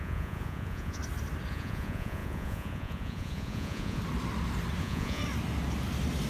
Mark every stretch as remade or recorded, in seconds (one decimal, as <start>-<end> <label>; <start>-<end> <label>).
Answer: 0.0-1.0 remade; 1.0-1.5 recorded; 1.5-4.0 remade; 4.0-4.8 recorded; 4.8-5.2 remade; 5.2-6.3 recorded